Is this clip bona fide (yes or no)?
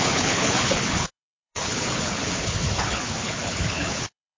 no